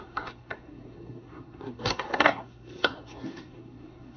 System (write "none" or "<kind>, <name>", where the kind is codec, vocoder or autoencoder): codec, SNAC